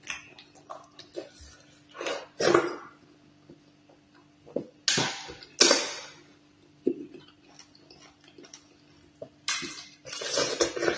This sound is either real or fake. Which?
real